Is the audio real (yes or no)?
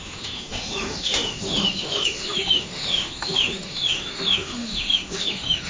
no